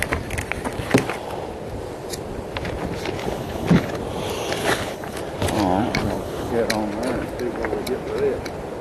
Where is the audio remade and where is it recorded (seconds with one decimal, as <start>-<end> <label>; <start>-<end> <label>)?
0.0-3.2 recorded; 3.2-3.9 remade; 3.9-4.6 recorded; 4.6-5.2 remade; 5.2-6.0 recorded; 6.0-6.5 remade; 6.5-8.8 recorded